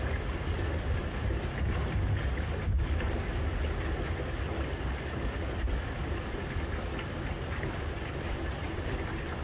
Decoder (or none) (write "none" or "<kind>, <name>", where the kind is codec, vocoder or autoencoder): none